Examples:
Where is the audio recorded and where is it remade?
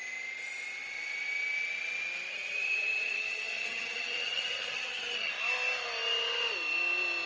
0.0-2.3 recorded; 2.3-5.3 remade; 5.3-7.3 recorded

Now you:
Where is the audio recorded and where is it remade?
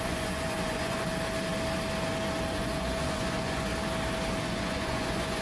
0.0-1.1 remade; 1.1-2.5 recorded; 2.5-3.7 remade; 3.7-4.4 recorded; 4.4-5.4 remade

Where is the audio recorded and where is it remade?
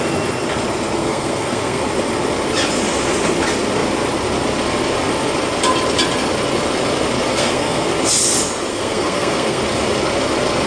0.0-1.0 recorded; 1.0-1.8 remade; 1.8-7.3 recorded; 7.3-7.9 remade; 7.9-8.7 recorded; 8.7-9.6 remade; 9.6-10.7 recorded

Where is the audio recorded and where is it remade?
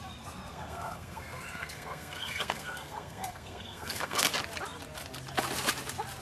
0.0-0.5 recorded; 0.5-4.2 remade; 4.2-6.2 recorded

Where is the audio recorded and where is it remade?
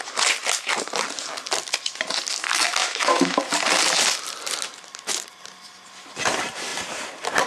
0.0-2.8 recorded; 2.8-3.4 remade; 3.4-7.5 recorded